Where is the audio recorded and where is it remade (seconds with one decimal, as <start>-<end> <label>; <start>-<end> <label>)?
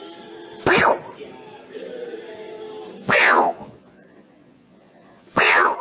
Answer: 0.0-3.0 recorded; 3.0-5.8 remade